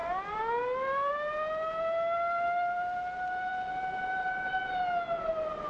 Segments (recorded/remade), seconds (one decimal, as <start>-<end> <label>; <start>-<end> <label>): 0.0-5.7 recorded